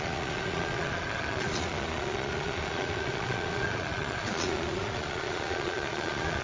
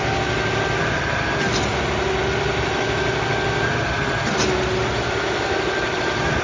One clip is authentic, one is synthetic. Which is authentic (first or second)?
second